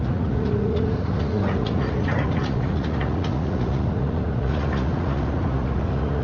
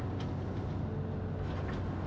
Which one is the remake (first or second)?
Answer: first